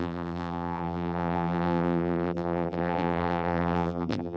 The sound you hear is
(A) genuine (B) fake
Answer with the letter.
B